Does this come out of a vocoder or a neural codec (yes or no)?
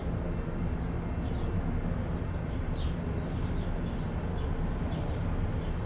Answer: no